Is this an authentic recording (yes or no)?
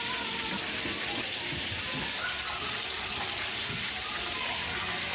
yes